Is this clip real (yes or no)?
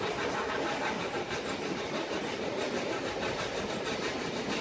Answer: yes